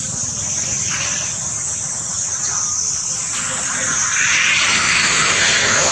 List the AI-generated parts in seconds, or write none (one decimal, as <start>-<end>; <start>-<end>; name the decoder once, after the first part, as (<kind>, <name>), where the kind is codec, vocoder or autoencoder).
4.7-5.9 (autoencoder, DAC-VAE)